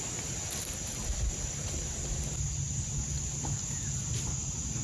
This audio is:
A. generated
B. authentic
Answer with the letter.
B